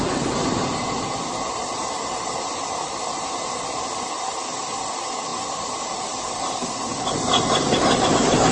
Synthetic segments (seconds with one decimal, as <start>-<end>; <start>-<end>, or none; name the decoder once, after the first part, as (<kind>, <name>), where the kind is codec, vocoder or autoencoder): none